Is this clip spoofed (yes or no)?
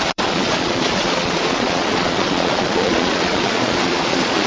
yes